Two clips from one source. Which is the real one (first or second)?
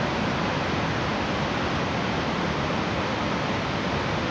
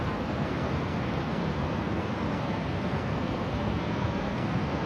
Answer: first